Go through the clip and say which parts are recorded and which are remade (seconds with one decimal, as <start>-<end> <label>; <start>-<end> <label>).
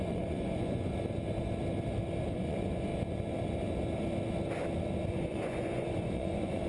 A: 0.0-0.9 remade; 0.9-2.3 recorded; 2.3-2.9 remade; 2.9-5.1 recorded; 5.1-6.7 remade